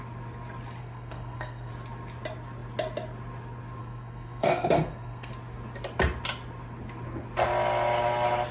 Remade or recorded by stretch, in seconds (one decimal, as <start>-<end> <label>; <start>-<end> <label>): 0.0-0.8 recorded; 0.8-1.7 remade; 1.7-3.8 recorded; 3.8-5.3 remade; 5.3-8.5 recorded